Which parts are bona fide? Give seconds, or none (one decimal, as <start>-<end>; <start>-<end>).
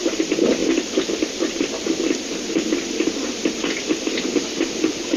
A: none